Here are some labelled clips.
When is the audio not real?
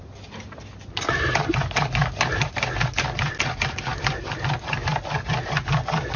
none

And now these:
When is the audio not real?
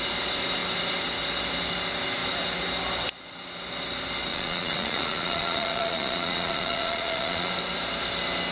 4.3-7.5 (vocoder, Vocos)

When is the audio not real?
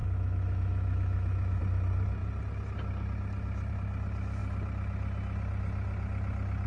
0.0-1.6 (autoencoder, DAC-VAE)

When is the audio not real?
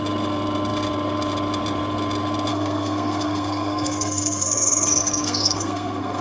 2.5-6.2 (codec, SNAC)